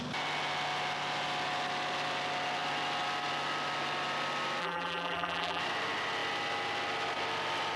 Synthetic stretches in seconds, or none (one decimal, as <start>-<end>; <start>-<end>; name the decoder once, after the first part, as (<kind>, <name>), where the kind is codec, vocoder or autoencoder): 4.6-5.6 (vocoder, BigVGAN v2)